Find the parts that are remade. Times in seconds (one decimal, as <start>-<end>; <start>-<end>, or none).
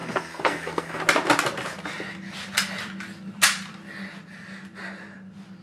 0.0-1.0